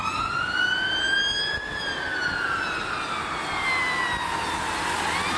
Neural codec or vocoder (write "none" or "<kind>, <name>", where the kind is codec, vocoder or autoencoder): none